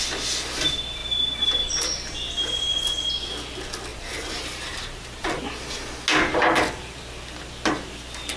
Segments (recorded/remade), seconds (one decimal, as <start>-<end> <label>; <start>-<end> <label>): 0.0-3.9 recorded; 3.9-5.4 remade; 5.4-6.3 recorded; 6.3-7.0 remade; 7.0-8.4 recorded